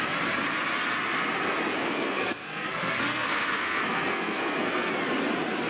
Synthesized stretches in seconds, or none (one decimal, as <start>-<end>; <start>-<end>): 1.8-4.9